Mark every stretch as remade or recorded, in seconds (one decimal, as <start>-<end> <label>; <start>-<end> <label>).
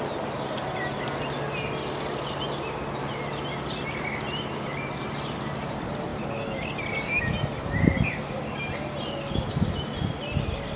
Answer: 0.0-10.8 recorded